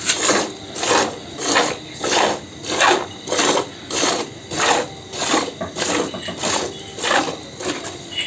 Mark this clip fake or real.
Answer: real